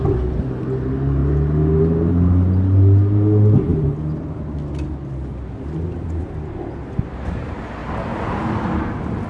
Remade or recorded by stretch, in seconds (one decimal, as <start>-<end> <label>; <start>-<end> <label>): 0.0-9.3 recorded